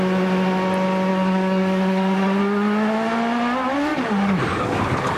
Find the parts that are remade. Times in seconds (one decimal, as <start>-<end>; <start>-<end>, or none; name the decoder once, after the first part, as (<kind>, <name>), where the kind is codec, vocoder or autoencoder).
1.1-2.4 (codec, DAC); 3.9-5.2